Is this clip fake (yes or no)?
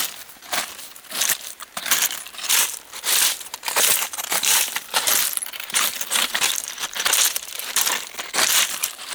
yes